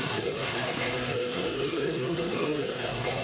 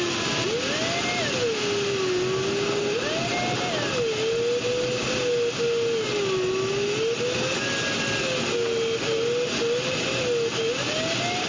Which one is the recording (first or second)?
second